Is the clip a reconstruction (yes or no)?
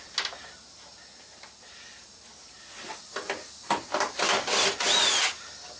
no